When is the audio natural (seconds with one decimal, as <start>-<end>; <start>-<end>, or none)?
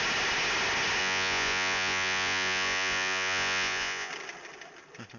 0.0-1.0; 4.1-5.2